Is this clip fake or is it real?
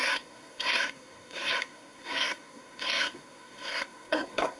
fake